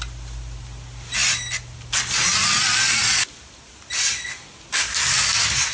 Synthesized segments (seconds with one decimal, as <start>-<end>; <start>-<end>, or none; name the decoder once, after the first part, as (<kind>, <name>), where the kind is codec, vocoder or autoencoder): none